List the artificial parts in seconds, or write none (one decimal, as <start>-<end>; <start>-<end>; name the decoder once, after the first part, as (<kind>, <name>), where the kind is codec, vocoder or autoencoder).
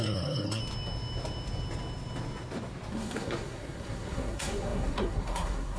0.0-0.6 (codec, SNAC); 2.9-5.8